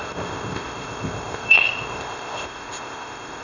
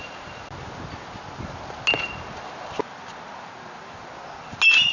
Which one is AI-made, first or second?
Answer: first